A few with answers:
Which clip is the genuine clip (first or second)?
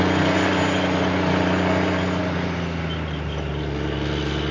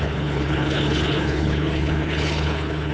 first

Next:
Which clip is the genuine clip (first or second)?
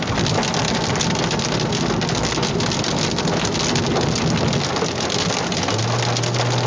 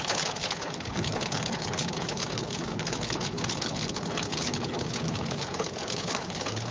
first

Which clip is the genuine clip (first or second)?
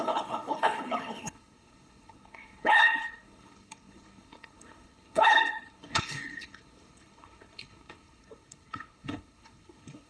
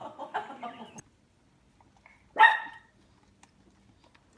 second